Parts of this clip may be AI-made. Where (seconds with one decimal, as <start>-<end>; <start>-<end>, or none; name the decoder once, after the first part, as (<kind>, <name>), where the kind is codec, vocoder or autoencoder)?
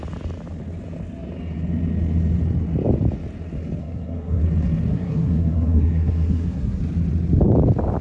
3.8-4.4 (codec, SNAC); 4.9-6.8